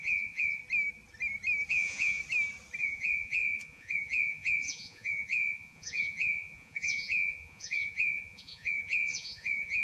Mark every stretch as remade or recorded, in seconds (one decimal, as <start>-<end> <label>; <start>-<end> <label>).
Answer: 0.0-0.6 remade; 0.6-1.7 recorded; 1.7-2.2 remade; 2.2-2.8 recorded; 2.8-9.8 remade